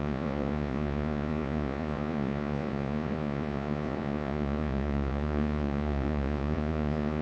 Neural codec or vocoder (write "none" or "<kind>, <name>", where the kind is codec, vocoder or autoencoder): vocoder, Vocos